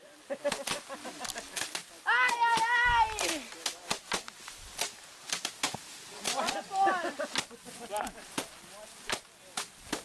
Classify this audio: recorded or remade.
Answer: recorded